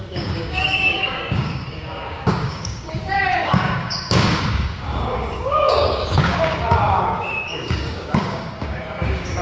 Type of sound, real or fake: fake